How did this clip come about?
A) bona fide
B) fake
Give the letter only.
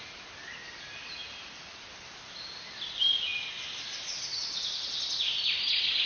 A